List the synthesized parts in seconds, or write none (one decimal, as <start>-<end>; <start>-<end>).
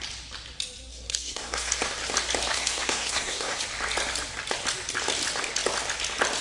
0.9-1.7; 2.5-3.6